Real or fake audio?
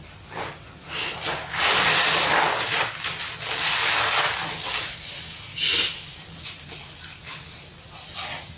real